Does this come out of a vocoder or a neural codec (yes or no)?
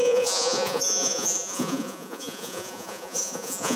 yes